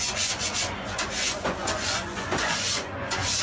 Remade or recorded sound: remade